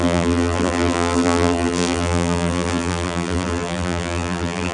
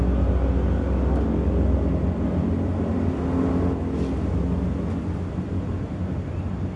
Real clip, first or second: second